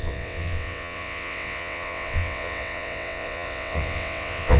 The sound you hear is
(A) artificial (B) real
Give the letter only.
A